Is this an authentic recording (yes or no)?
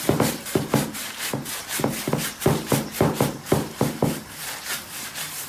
no